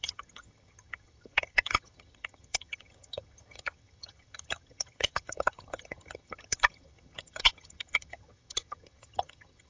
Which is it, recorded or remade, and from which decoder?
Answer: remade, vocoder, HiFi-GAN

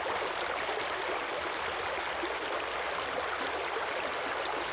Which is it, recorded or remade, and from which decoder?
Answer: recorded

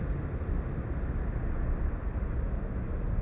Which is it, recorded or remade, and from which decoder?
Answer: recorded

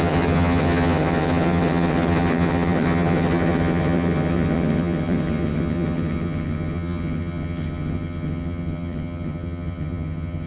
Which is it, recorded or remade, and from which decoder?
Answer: remade, vocoder, HiFi-GAN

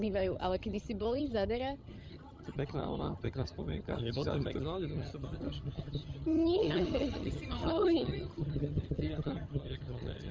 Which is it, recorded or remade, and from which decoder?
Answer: remade, vocoder, HiFi-GAN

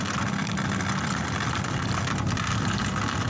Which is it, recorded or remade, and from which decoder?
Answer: recorded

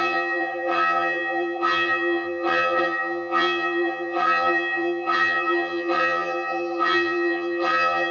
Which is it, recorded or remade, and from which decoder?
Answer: remade, vocoder, HiFi-GAN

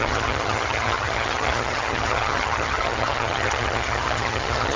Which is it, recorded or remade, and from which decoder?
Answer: remade, vocoder, HiFi-GAN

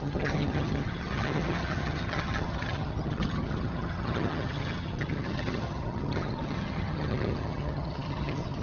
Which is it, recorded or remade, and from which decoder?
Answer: remade, vocoder, HiFi-GAN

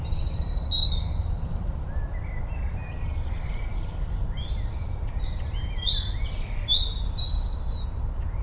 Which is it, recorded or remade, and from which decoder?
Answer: recorded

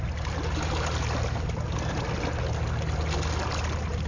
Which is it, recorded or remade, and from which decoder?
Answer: recorded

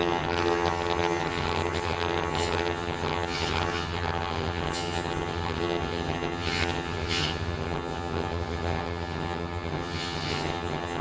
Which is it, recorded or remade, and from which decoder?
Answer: remade, vocoder, HiFi-GAN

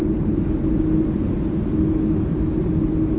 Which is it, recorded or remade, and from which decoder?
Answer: recorded